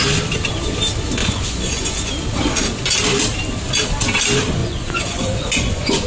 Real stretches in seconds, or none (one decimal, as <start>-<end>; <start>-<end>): 0.0-1.2; 2.1-4.6